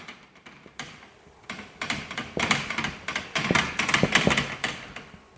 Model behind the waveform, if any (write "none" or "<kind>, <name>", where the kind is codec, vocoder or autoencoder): none